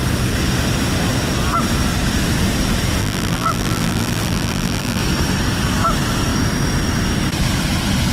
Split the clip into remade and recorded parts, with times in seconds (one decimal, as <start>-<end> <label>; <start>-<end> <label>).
0.0-3.0 recorded; 3.0-5.0 remade; 5.0-8.1 recorded